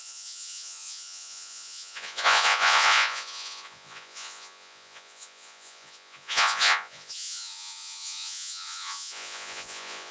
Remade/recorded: remade